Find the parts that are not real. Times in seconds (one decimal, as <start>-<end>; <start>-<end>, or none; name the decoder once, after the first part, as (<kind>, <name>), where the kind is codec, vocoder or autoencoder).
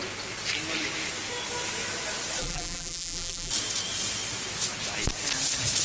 2.4-3.5 (vocoder, BigVGAN v2)